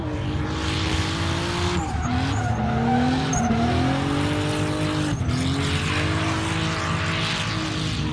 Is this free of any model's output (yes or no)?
yes